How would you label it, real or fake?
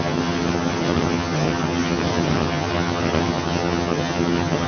fake